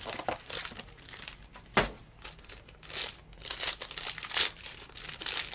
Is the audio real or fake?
real